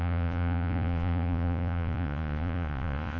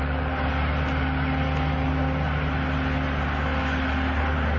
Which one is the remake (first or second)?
first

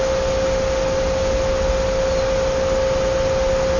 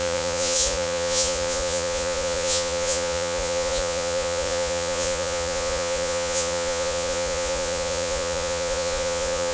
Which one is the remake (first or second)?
second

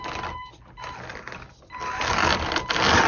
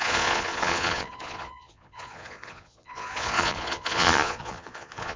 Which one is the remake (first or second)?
second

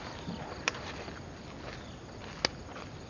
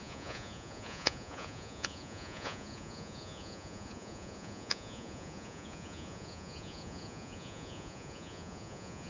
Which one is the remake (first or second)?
second